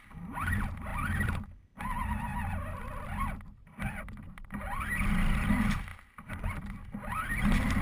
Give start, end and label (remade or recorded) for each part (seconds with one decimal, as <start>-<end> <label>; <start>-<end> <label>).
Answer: 0.0-7.8 recorded